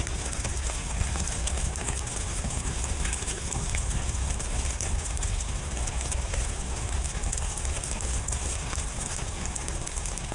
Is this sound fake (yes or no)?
yes